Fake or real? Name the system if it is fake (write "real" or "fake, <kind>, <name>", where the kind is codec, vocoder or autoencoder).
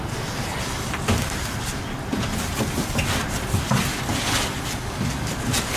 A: fake, vocoder, BigVGAN v2